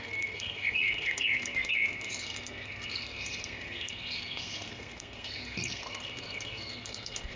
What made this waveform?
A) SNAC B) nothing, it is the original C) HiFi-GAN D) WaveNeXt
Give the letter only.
A